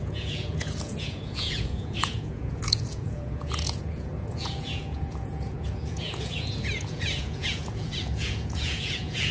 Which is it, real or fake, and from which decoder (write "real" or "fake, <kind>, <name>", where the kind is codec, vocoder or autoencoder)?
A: fake, vocoder, Vocos